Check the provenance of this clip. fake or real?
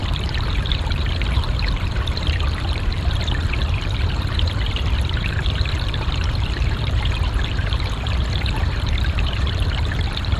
fake